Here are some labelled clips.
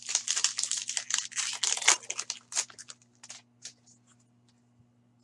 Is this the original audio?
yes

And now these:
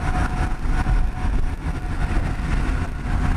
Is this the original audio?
yes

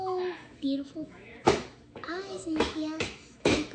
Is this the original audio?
no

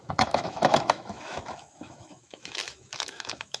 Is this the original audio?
no